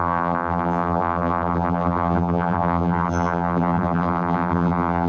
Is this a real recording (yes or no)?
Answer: no